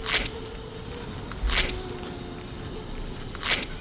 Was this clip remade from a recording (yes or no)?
no